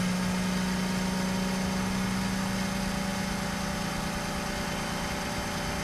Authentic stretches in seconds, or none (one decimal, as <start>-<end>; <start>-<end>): 0.0-5.8